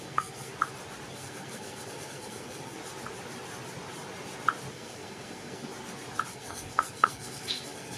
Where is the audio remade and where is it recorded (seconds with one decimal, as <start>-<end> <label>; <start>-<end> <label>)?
0.0-0.5 remade; 0.5-1.1 recorded; 1.1-2.8 remade; 2.8-4.7 recorded; 4.7-5.7 remade; 5.7-6.3 recorded; 6.3-8.0 remade